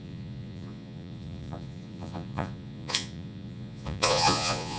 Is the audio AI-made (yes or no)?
yes